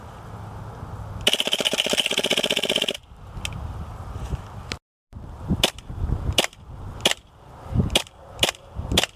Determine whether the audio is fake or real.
real